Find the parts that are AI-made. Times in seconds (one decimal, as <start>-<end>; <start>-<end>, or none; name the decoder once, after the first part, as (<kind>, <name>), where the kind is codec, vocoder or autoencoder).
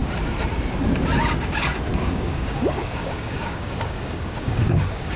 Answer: 1.9-5.2 (codec, DAC)